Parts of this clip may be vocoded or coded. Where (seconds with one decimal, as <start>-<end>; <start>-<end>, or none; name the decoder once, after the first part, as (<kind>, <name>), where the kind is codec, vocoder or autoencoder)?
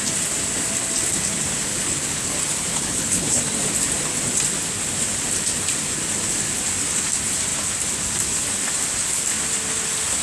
1.7-2.3 (codec, HILCodec); 2.7-3.4